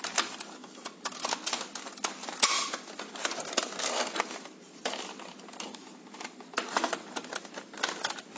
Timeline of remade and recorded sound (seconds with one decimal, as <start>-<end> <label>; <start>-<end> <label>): 0.0-8.4 recorded